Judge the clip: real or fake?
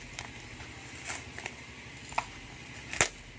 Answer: real